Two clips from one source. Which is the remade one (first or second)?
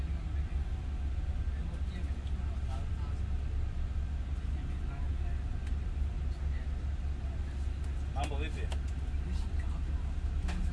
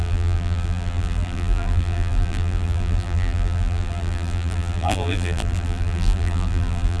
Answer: second